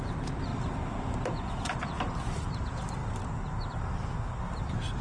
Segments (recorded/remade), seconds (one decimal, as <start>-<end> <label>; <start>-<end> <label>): 0.0-0.5 remade; 0.5-1.1 recorded; 1.1-3.0 remade; 3.0-3.7 recorded; 3.7-5.0 remade